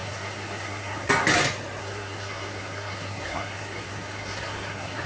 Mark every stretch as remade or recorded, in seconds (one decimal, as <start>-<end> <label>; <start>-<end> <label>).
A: 0.0-1.1 remade; 1.1-1.8 recorded; 1.8-5.1 remade